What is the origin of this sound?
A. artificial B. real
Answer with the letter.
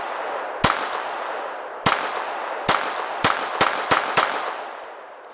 B